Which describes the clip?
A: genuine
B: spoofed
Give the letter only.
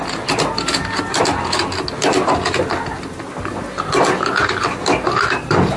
A